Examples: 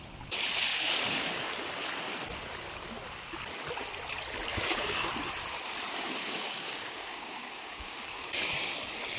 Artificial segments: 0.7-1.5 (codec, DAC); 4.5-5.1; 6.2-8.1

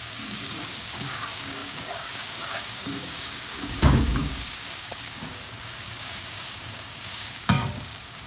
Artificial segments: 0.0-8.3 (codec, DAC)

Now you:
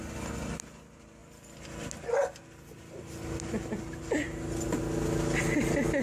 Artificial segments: none

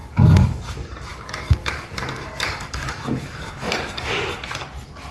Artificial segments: 0.0-0.6 (codec, DAC); 1.1-4.2

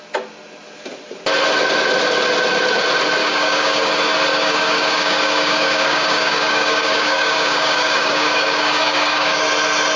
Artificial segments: 3.2-3.9 (codec, DAC); 4.3-9.4